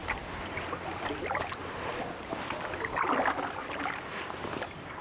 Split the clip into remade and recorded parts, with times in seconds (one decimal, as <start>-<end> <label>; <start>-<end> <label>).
0.0-3.0 recorded; 3.0-5.0 remade